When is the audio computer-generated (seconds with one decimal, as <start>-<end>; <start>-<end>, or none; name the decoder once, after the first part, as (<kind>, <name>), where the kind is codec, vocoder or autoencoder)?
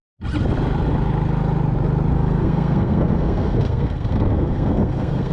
2.1-5.3 (codec, SNAC)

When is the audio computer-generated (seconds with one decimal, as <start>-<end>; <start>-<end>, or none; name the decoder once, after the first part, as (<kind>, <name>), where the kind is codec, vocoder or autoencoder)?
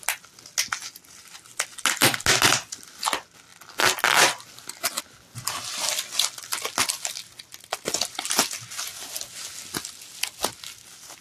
none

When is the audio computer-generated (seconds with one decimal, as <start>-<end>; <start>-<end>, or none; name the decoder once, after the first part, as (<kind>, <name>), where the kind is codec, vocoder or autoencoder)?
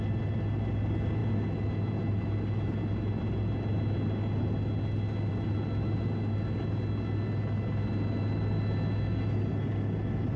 none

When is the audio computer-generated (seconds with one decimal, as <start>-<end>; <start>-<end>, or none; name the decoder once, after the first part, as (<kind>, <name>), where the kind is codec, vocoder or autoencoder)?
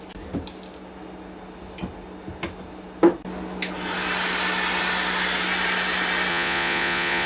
6.3-7.3 (vocoder, Vocos)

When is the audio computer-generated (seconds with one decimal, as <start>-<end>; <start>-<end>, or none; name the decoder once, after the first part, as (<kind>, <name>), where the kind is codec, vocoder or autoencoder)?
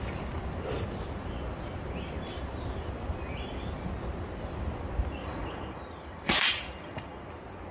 5.2-7.2 (vocoder, Vocos)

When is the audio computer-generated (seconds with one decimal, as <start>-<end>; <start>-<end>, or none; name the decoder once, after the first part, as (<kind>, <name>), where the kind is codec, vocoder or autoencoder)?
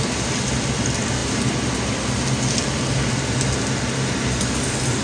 none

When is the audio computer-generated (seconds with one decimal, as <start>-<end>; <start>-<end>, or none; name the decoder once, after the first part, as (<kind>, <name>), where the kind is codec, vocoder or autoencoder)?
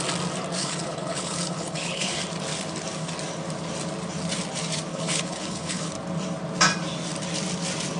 0.6-2.2 (codec, HILCodec); 4.9-5.9